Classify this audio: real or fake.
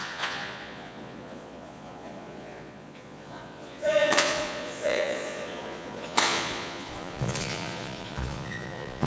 fake